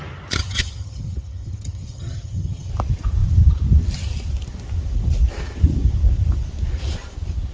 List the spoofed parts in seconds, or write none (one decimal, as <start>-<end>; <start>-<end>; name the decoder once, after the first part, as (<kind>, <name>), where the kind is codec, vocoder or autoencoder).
0.4-2.7 (vocoder, HiFi-GAN)